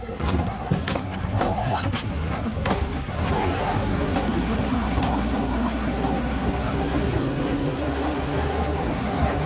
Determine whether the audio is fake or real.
fake